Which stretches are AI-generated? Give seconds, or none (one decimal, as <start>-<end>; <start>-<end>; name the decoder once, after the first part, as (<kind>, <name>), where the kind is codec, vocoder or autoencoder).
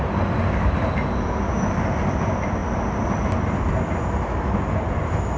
none